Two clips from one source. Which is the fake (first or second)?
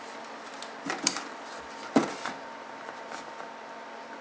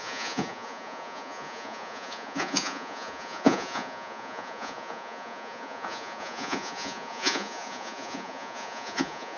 second